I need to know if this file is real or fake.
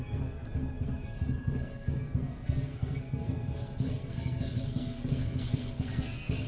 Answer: fake